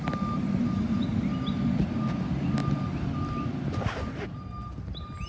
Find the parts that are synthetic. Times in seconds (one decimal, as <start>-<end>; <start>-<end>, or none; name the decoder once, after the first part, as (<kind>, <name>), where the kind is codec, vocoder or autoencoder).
none